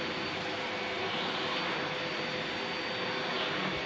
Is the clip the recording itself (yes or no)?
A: yes